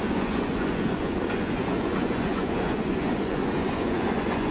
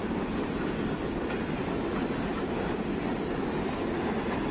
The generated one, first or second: first